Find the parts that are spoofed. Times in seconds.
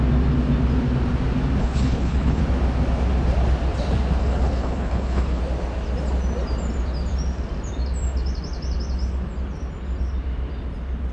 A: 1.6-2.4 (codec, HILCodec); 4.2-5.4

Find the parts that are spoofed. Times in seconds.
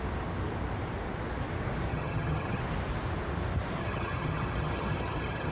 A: 1.9-2.6 (vocoder, HiFi-GAN); 3.8-5.5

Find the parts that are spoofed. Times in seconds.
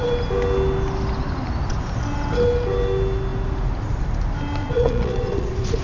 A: 4.6-5.8 (vocoder, Vocos)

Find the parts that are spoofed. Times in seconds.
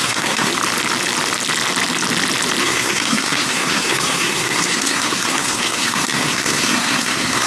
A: 0.0-0.5 (codec, SNAC); 2.6-7.5